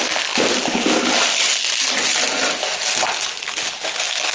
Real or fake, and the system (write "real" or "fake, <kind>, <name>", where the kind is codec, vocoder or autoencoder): real